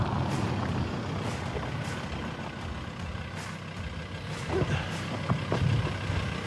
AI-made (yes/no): no